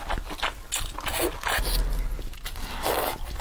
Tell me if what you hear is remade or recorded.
recorded